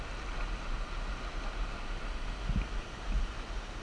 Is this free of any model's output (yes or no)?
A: yes